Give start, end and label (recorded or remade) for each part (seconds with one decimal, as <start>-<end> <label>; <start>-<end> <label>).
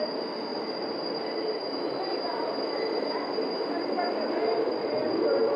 0.0-5.6 recorded